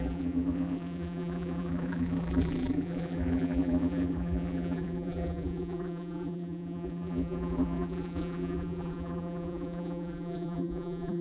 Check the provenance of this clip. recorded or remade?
remade